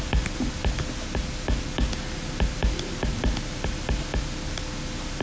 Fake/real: real